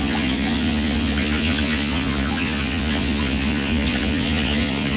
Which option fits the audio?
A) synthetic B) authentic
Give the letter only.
A